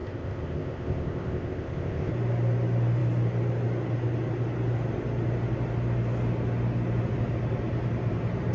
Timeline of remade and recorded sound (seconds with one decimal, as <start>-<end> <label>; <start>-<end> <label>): 0.0-2.1 remade; 2.1-8.5 recorded